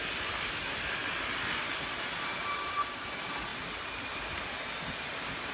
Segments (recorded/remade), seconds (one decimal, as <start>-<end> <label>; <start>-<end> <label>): 0.0-5.5 recorded